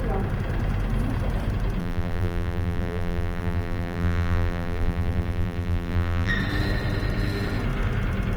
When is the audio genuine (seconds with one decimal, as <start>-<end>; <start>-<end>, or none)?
0.0-1.8; 6.3-8.4